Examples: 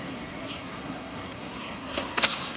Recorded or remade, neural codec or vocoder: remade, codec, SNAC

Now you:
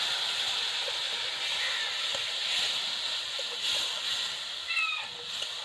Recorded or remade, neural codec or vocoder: recorded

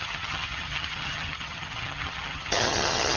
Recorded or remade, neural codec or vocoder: remade, vocoder, HiFi-GAN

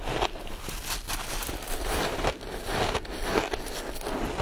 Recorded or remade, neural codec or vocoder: recorded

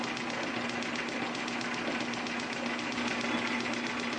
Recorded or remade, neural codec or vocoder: recorded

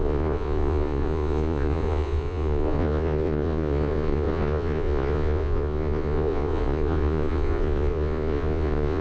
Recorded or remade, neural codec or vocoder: remade, vocoder, Vocos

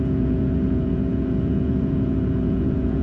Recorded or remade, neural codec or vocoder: remade, vocoder, Vocos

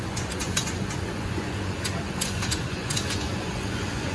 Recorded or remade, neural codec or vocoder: remade, vocoder, Vocos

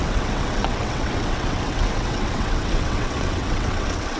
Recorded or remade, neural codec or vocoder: remade, vocoder, WaveNeXt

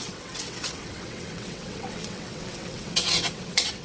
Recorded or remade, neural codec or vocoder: remade, vocoder, WaveNeXt